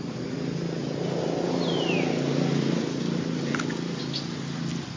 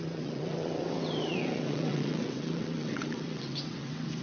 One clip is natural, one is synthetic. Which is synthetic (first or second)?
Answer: second